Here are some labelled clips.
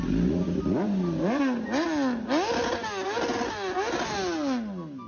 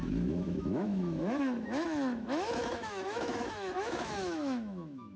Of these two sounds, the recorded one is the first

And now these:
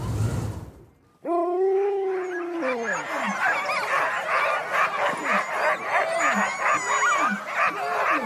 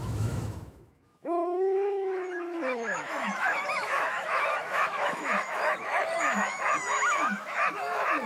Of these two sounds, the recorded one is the first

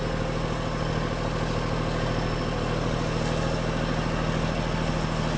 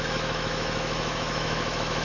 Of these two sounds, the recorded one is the first